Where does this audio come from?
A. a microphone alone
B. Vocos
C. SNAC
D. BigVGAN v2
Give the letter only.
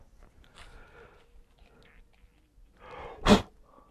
A